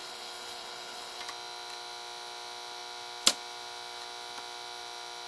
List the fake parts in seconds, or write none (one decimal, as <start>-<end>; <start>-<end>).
0.0-1.2